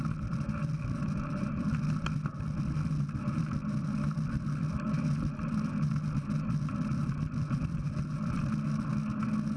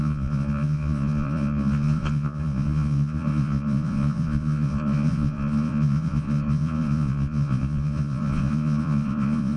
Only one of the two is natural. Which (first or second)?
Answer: first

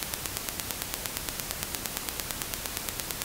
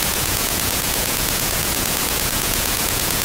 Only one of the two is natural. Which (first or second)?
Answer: first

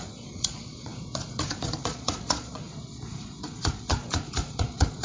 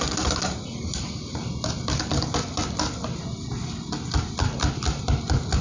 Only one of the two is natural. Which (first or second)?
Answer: second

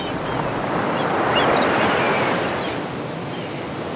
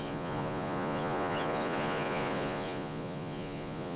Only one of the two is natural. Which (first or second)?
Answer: first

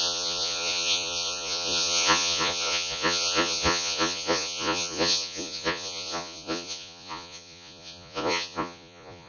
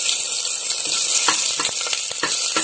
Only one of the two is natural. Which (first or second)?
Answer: second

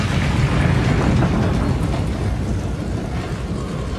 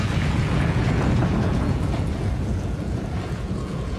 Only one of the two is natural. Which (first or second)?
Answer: first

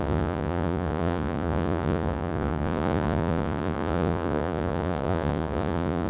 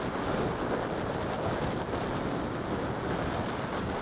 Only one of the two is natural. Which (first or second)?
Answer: second